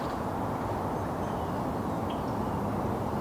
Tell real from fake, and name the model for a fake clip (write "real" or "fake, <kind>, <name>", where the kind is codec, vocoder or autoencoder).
real